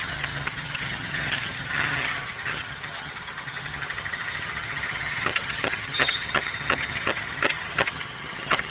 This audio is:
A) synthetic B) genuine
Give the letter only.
A